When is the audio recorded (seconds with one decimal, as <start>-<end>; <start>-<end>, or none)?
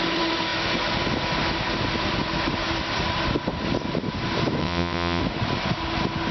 0.0-4.6; 5.2-6.3